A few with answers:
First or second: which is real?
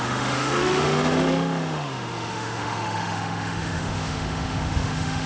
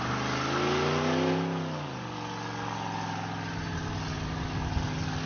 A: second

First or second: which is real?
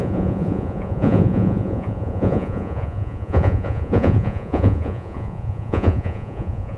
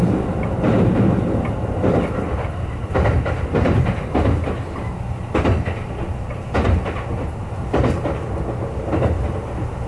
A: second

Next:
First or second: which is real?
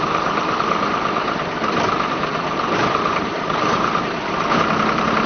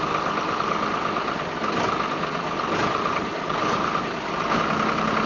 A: second